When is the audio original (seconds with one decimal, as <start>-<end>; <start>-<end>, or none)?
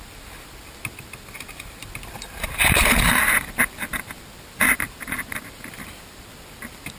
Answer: 0.0-7.0